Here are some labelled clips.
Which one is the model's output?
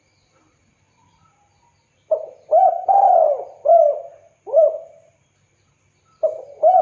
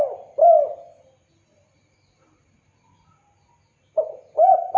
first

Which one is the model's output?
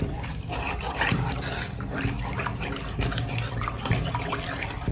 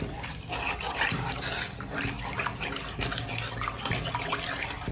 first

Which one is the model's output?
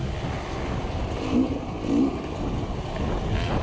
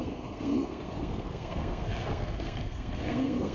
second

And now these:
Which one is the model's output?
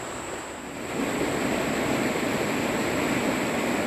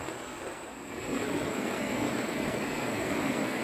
second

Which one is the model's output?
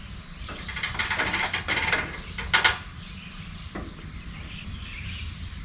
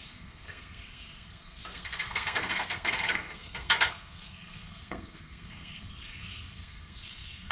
second